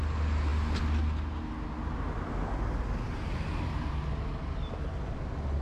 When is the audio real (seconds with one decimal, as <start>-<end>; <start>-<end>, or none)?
0.0-5.6

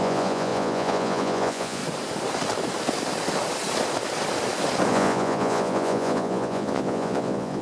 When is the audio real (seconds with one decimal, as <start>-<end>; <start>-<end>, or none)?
1.8-4.9

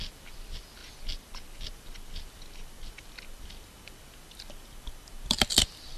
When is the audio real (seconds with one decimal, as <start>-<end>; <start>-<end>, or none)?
0.0-6.0

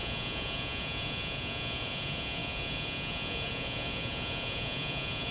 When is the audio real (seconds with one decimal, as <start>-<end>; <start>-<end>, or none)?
none